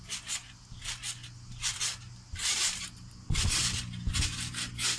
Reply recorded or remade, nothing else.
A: recorded